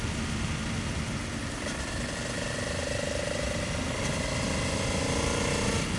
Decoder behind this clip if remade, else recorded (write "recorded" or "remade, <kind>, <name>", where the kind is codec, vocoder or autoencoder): recorded